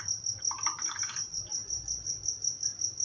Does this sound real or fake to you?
real